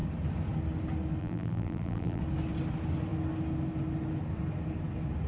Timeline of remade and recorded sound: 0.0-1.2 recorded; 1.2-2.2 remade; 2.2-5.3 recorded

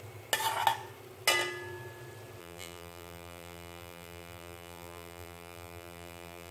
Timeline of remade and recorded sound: 0.0-2.4 recorded; 2.4-6.5 remade

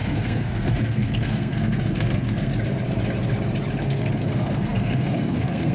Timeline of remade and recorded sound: 0.0-2.5 remade; 2.5-3.8 recorded; 3.8-5.7 remade